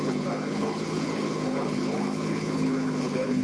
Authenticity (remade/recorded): remade